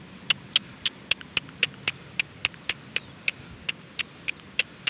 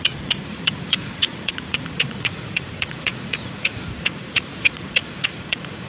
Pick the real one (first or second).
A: first